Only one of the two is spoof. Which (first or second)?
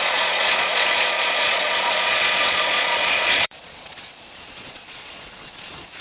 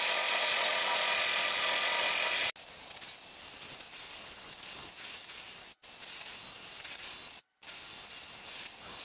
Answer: first